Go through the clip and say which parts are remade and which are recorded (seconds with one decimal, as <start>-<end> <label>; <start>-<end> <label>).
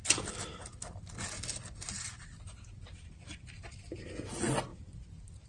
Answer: 0.0-5.5 recorded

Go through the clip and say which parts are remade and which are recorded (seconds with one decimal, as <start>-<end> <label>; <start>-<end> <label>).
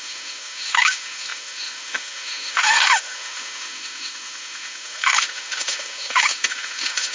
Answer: 0.0-7.1 remade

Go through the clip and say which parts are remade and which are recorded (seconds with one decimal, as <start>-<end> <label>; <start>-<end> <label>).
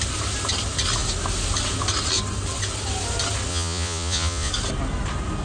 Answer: 0.0-3.5 recorded; 3.5-4.5 remade; 4.5-5.4 recorded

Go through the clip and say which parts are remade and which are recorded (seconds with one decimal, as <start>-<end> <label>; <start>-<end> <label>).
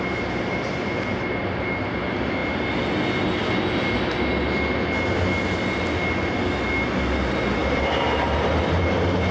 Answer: 0.0-1.4 recorded; 1.4-2.0 remade; 2.0-7.6 recorded; 7.6-8.8 remade; 8.8-9.3 recorded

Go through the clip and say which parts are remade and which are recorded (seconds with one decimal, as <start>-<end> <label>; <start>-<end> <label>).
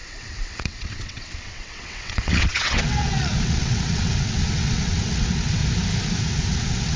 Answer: 0.0-5.6 remade; 5.6-6.2 recorded; 6.2-7.0 remade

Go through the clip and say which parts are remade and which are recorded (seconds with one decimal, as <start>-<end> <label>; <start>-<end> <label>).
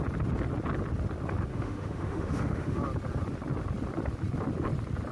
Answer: 0.0-1.5 recorded; 1.5-2.8 remade; 2.8-5.1 recorded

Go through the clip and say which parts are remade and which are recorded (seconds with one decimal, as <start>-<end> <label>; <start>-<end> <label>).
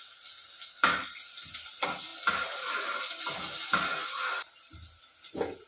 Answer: 0.0-5.7 recorded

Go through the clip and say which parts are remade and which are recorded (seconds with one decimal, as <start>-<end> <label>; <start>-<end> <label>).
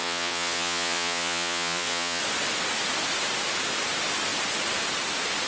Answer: 0.0-2.2 remade; 2.2-5.5 recorded